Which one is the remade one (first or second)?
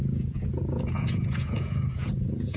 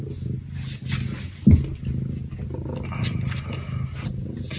first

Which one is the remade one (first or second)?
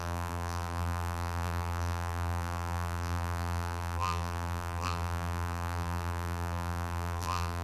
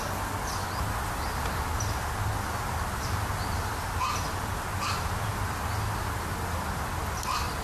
first